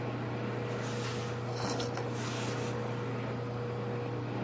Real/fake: real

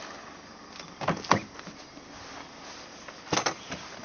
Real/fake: real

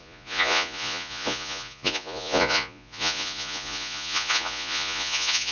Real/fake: fake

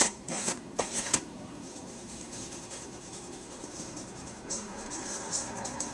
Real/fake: fake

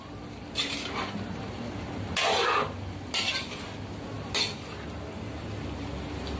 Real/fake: real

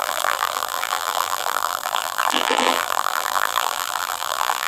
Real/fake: fake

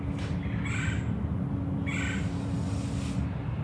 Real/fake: real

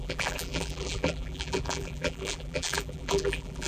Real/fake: fake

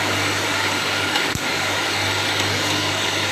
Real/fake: fake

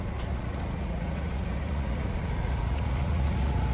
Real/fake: fake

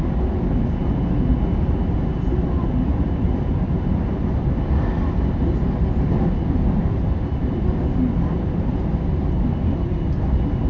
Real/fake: real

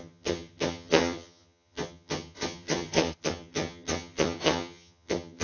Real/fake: fake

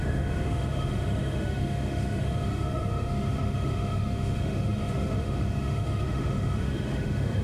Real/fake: fake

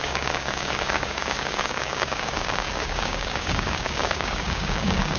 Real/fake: fake